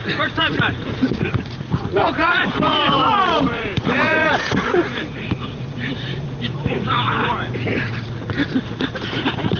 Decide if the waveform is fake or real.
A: fake